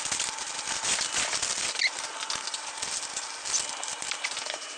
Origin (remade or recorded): recorded